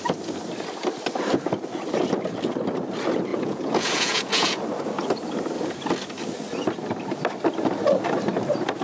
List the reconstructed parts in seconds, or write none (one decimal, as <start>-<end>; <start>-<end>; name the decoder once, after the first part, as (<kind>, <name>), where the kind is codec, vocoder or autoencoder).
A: 3.3-4.6 (vocoder, Vocos)